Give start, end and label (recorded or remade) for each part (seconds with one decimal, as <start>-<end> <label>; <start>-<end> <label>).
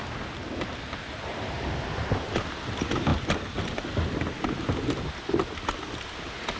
0.0-1.2 recorded; 1.2-3.1 remade; 3.1-6.6 recorded